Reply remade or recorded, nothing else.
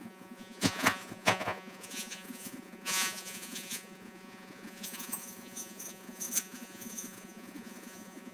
remade